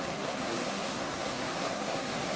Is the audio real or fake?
fake